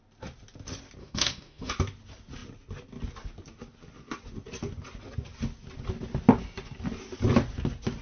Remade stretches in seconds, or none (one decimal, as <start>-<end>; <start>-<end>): 1.0-1.7